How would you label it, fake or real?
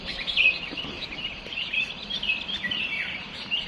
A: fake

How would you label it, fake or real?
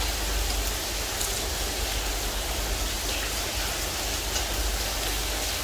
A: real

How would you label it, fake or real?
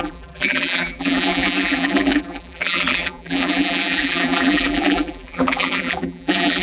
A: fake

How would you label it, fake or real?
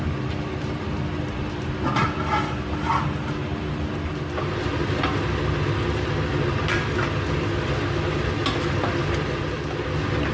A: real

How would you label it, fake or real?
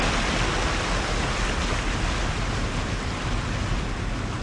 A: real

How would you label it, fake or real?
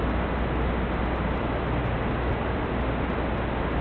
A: real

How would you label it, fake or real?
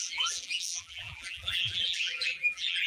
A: fake